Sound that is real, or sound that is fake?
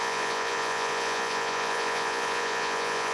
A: fake